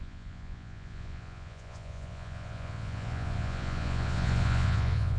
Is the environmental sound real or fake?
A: fake